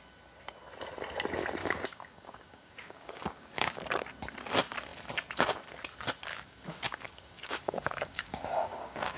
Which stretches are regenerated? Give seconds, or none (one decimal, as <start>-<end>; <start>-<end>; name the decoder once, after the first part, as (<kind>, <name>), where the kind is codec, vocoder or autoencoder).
1.6-3.8 (codec, DAC); 6.3-9.2